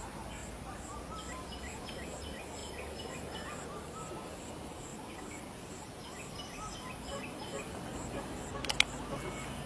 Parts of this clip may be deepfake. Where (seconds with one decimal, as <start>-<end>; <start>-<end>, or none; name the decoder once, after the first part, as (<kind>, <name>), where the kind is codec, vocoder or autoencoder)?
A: none